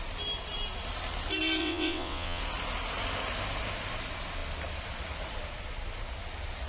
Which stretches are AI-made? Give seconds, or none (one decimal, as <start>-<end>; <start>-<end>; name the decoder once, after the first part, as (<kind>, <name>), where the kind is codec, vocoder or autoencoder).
1.6-2.4 (vocoder, WaveNeXt)